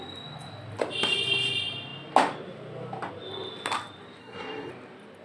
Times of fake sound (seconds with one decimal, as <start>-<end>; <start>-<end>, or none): 4.2-4.7